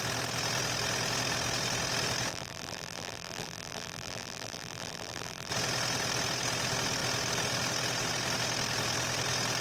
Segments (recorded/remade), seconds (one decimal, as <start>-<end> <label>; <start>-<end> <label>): 0.0-2.3 recorded; 2.3-5.5 remade; 5.5-9.6 recorded